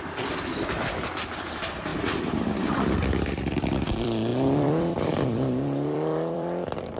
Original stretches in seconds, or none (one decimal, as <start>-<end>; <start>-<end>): none

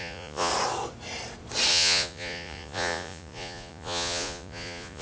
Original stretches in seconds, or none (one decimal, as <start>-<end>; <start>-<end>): 0.5-1.7